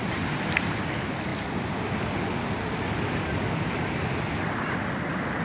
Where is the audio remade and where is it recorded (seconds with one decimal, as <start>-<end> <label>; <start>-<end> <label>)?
0.0-5.4 recorded